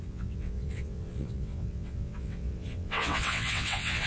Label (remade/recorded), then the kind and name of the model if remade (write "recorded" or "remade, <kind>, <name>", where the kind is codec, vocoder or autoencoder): remade, vocoder, WaveNeXt